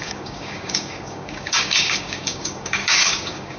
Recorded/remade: remade